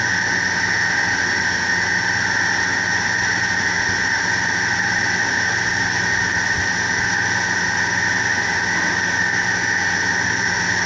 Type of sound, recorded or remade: recorded